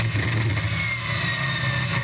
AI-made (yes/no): no